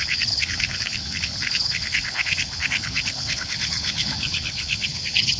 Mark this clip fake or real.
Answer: fake